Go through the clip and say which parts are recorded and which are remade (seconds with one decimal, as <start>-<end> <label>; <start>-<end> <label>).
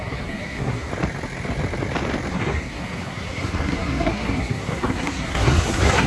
0.0-0.9 remade; 0.9-2.3 recorded; 2.3-6.1 remade